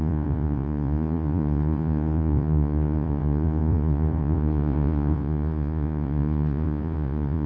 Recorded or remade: remade